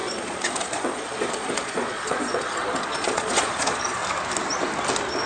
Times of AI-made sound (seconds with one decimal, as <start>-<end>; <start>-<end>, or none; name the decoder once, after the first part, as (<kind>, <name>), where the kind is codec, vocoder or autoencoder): 0.0-4.0 (vocoder, Vocos)